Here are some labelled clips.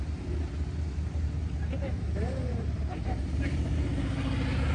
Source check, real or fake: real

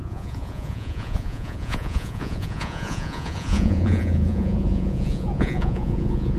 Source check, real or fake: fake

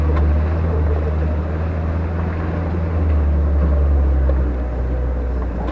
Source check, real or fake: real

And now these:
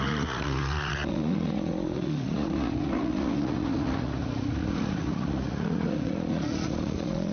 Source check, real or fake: fake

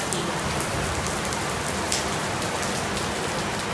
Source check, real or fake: real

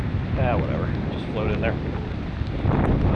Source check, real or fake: real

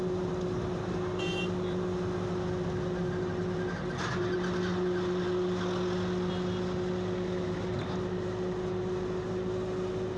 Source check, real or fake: real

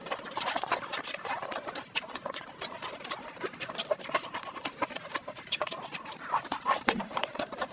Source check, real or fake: fake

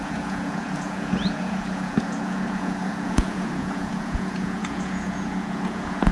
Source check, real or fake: fake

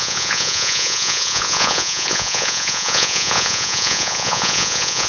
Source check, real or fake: fake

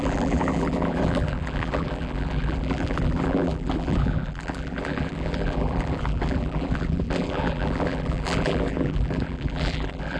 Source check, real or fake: fake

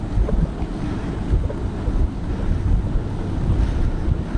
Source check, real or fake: real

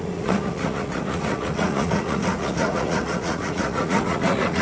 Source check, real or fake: fake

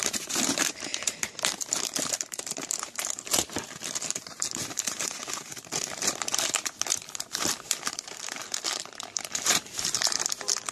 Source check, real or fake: fake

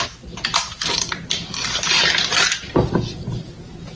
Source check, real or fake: real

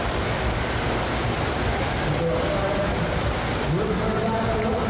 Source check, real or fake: real